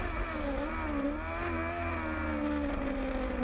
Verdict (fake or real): real